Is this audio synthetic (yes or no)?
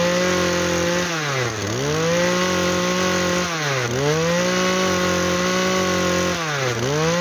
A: no